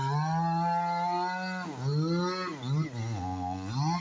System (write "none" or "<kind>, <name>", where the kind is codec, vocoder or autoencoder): none